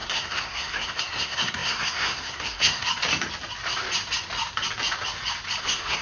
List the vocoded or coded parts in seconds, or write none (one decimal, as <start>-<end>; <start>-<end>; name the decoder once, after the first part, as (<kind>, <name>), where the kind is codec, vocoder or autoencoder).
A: 0.0-2.9 (codec, SNAC); 5.6-6.0